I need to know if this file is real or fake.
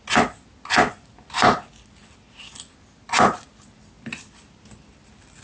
real